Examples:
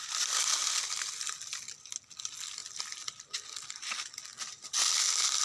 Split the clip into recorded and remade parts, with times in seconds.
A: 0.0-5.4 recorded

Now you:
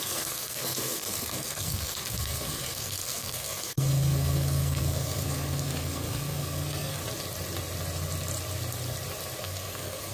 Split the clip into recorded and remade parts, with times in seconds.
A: 0.0-7.0 remade; 7.0-9.4 recorded; 9.4-10.1 remade

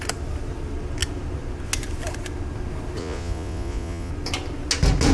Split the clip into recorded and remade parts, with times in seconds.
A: 0.0-3.0 recorded; 3.0-4.1 remade; 4.1-5.1 recorded

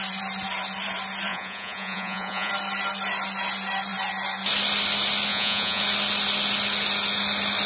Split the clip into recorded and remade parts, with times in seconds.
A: 0.0-1.3 recorded; 1.3-2.5 remade; 2.5-5.3 recorded; 5.3-5.8 remade; 5.8-7.7 recorded